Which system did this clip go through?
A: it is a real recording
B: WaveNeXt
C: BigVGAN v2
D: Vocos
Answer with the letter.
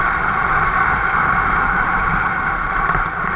C